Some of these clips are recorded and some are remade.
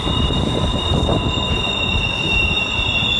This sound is remade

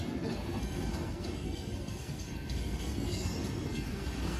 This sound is remade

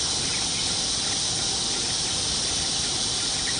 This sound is recorded